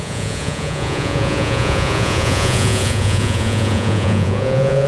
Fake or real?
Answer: fake